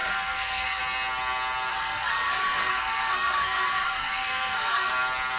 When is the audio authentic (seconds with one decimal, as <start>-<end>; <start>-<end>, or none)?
0.8-1.7; 4.9-5.4